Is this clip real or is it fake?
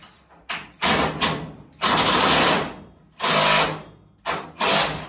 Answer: real